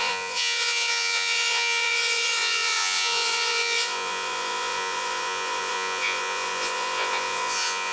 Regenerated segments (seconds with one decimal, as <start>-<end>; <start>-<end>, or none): 0.0-7.9